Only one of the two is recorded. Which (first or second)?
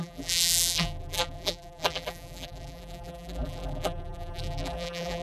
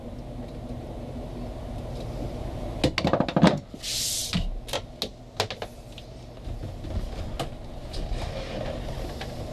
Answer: second